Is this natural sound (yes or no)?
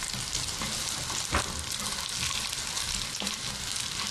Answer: yes